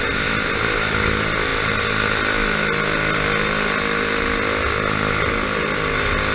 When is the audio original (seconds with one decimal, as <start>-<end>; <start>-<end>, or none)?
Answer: 0.0-6.3